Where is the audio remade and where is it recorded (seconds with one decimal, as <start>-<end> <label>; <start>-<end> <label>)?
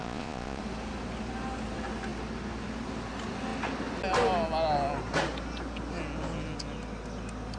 0.0-0.6 remade; 0.6-7.6 recorded